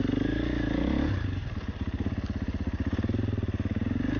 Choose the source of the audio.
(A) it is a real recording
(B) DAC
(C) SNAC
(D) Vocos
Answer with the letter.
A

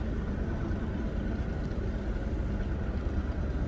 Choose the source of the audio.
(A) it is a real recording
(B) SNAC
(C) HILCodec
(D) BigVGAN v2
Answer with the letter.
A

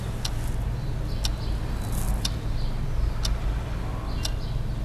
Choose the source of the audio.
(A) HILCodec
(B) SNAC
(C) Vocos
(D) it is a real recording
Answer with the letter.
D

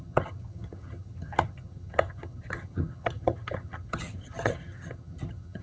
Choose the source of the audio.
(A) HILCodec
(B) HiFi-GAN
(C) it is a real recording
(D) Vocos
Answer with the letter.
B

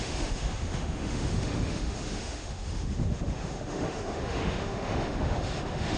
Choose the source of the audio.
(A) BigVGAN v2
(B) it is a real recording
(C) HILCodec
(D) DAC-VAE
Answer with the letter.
D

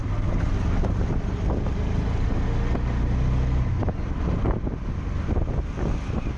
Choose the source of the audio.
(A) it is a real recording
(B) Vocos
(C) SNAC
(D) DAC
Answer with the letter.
A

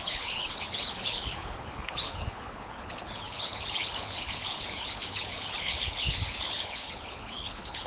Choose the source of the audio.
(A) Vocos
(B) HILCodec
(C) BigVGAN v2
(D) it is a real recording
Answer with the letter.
B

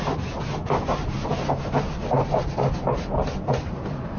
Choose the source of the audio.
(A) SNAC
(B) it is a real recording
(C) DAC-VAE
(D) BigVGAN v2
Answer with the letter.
B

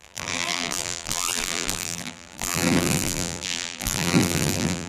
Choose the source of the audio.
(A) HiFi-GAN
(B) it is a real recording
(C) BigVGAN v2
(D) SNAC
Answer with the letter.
C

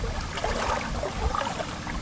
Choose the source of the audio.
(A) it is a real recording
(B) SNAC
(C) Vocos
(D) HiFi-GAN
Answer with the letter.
A